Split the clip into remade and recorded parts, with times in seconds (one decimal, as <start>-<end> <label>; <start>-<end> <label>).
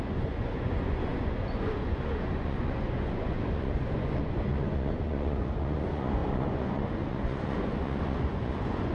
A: 0.0-8.9 remade